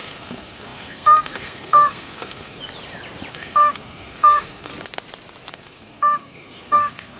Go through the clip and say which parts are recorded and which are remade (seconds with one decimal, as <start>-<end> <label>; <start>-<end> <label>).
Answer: 0.0-2.6 remade; 2.6-3.3 recorded; 3.3-4.7 remade; 4.7-5.5 recorded; 5.5-7.2 remade